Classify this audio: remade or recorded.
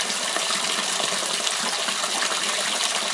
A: recorded